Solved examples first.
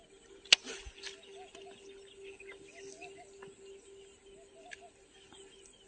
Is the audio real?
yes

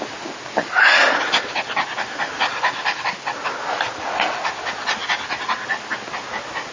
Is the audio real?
yes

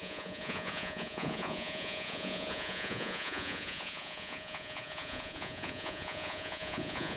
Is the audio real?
no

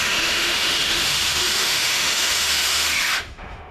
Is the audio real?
no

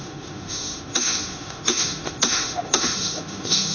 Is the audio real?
no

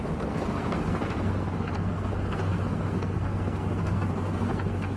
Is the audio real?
no